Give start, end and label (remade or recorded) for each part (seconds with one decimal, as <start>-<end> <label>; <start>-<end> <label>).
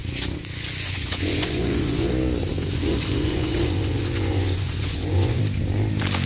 0.0-2.1 remade; 2.1-2.5 recorded; 2.5-5.4 remade; 5.4-6.3 recorded